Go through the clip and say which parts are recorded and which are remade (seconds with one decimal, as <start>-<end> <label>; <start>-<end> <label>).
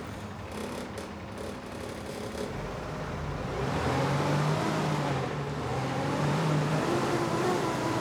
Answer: 0.0-5.7 recorded; 5.7-8.0 remade